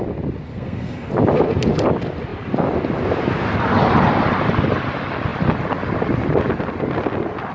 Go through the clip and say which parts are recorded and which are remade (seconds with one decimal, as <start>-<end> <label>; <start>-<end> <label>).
0.0-0.5 recorded; 0.5-1.1 remade; 1.1-7.5 recorded